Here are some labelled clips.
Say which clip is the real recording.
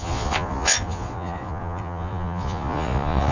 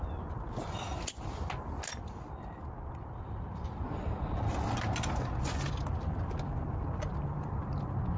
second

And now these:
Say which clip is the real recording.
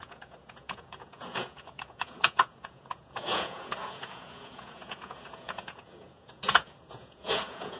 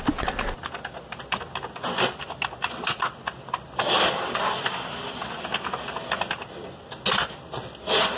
second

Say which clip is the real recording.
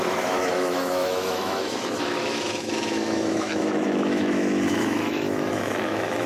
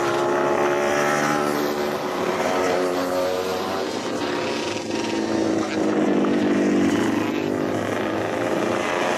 second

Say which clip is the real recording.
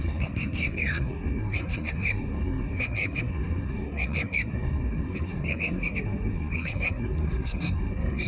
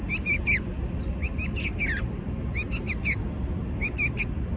second